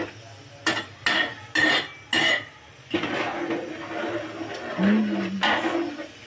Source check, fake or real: real